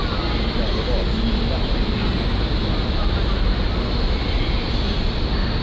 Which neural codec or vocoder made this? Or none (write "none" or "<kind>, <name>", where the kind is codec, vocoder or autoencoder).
none